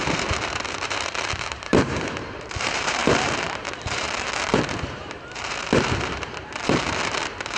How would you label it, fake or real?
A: fake